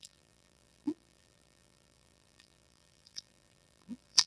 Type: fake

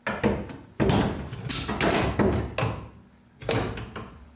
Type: real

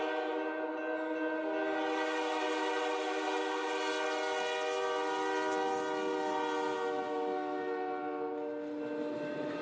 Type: real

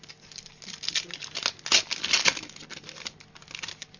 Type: real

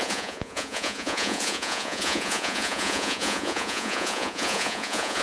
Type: fake